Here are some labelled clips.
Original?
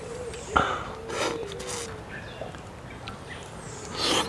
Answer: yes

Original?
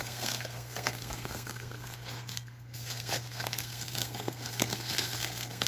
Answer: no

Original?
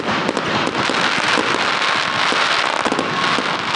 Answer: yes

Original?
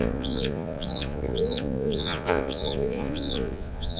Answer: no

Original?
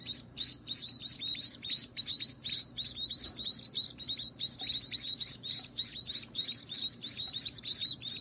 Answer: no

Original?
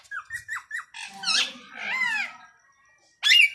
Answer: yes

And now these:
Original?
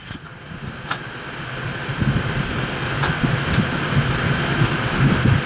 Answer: yes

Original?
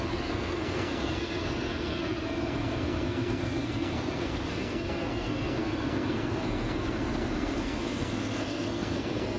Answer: no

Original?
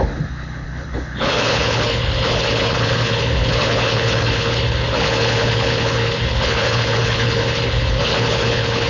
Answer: no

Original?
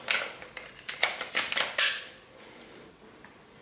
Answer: yes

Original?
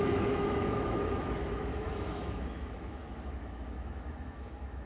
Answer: no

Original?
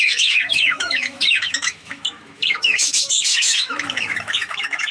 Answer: no